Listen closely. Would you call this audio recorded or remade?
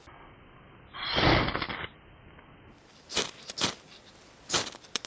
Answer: recorded